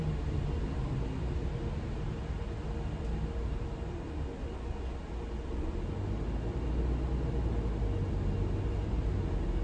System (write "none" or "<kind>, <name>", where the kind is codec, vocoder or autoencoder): none